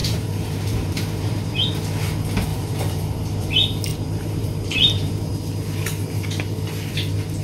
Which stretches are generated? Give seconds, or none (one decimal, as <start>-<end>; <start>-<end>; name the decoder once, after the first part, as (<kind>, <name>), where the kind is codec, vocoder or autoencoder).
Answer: 0.0-1.7 (vocoder, BigVGAN v2); 2.5-3.5; 3.9-5.3

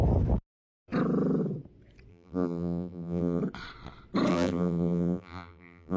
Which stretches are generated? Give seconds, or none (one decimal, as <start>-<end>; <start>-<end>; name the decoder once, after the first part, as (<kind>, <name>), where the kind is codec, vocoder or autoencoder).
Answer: 2.1-3.4 (vocoder, BigVGAN v2); 4.3-6.0

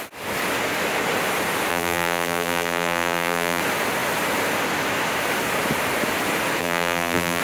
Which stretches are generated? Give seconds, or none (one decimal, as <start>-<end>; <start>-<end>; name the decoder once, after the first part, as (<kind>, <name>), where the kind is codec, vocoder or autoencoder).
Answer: 1.7-3.6 (vocoder, BigVGAN v2); 6.6-7.4

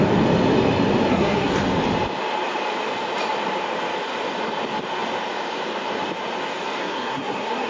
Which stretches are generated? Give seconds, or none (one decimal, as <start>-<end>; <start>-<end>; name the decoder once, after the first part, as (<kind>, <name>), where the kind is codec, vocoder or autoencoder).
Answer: 1.1-1.6 (codec, SNAC); 6.8-7.7